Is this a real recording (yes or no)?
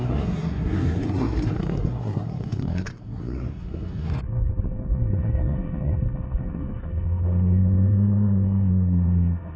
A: no